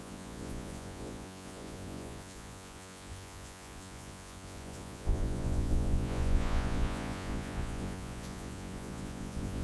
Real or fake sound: fake